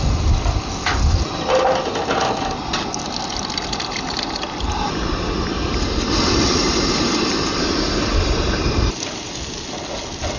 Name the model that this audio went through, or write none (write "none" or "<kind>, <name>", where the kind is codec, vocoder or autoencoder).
none